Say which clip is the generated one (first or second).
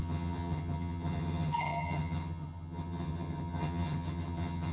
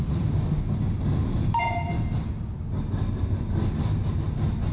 first